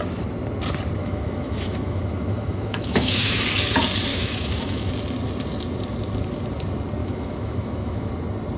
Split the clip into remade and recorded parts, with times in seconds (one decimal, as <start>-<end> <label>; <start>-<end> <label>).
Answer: 0.0-1.0 recorded; 1.0-3.4 remade; 3.4-4.1 recorded; 4.1-4.9 remade; 4.9-7.0 recorded; 7.0-8.1 remade; 8.1-8.6 recorded